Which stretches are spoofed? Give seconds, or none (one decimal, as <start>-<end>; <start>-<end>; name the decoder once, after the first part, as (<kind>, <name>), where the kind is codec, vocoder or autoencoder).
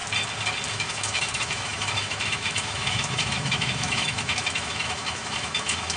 0.7-6.0 (autoencoder, DAC-VAE)